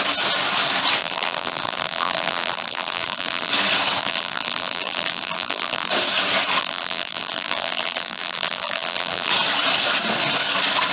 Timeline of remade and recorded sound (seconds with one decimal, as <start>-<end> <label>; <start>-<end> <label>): 0.0-1.0 recorded; 1.0-3.5 remade; 3.5-4.0 recorded; 4.0-5.9 remade; 5.9-6.6 recorded; 6.6-9.3 remade; 9.3-10.9 recorded